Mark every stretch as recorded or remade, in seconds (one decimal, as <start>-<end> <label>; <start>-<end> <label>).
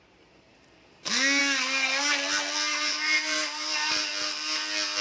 0.0-2.7 recorded; 2.7-4.1 remade; 4.1-5.0 recorded